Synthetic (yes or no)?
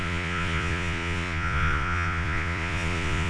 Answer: yes